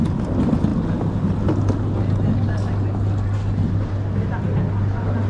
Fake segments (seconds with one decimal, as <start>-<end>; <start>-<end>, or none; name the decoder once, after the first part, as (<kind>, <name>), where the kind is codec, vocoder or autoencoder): none